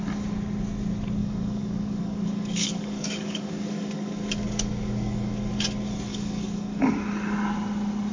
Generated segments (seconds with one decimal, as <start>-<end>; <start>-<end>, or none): 1.2-5.6; 6.1-6.8